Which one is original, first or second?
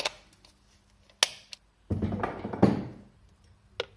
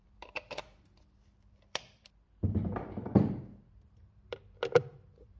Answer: first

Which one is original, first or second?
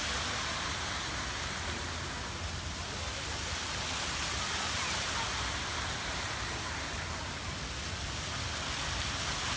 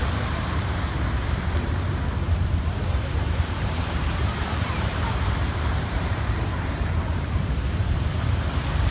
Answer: first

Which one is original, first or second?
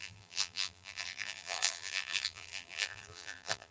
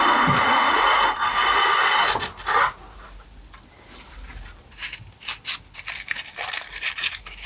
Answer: second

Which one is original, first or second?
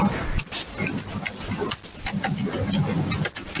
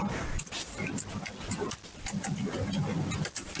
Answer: first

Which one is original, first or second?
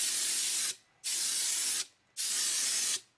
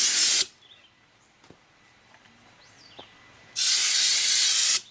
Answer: first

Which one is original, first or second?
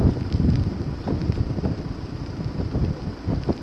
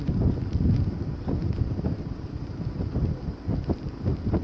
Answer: second